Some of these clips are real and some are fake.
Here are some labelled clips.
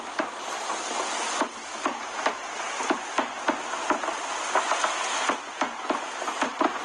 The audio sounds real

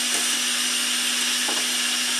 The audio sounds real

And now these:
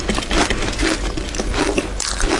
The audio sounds real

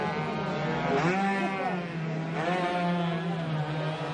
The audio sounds real